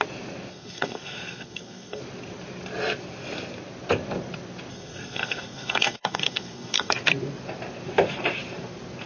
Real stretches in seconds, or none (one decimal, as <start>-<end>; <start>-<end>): 0.0-0.5; 2.0-4.7; 6.9-9.1